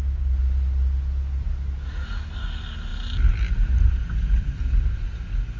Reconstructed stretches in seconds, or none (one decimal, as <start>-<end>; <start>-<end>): none